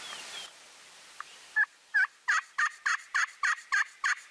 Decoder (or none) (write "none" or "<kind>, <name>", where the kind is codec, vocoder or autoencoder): none